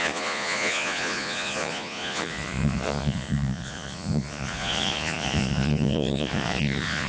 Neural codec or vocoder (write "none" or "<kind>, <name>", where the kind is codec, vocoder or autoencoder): vocoder, Vocos